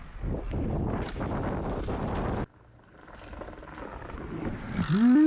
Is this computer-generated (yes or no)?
no